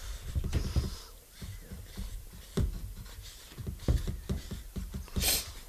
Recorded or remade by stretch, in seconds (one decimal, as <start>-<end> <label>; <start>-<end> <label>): 0.0-3.6 remade; 3.6-4.6 recorded; 4.6-5.7 remade